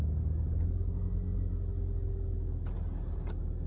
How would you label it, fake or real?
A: real